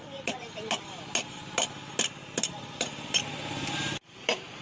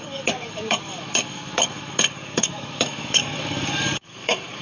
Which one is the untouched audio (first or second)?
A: first